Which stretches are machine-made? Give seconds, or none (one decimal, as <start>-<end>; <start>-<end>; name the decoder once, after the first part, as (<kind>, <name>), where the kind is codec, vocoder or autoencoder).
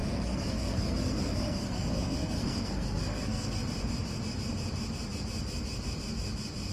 0.0-3.6 (codec, SNAC)